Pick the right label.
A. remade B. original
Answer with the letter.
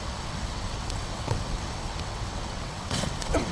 A